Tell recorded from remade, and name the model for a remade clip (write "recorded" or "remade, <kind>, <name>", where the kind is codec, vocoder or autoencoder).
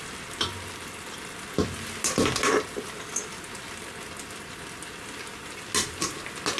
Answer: recorded